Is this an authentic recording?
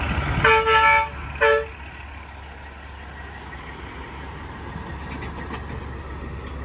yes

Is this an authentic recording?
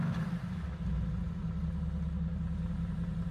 yes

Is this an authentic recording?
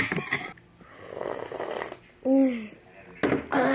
yes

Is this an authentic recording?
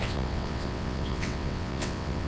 no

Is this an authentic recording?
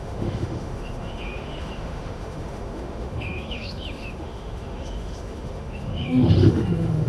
no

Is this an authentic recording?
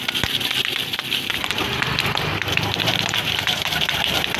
no